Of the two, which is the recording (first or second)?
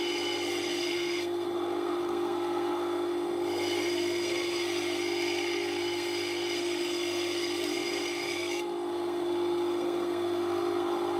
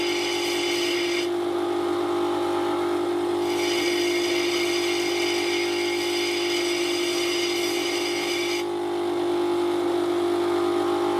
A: second